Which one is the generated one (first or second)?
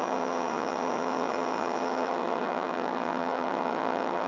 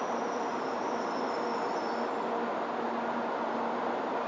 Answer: first